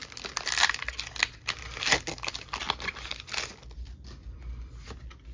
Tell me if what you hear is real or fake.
real